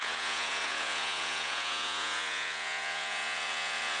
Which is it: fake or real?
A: fake